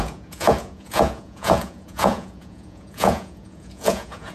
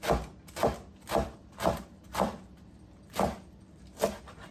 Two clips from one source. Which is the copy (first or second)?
first